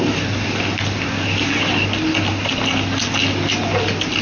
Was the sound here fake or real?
real